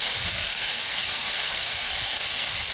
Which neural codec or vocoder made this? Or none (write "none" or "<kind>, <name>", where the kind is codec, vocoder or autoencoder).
codec, SNAC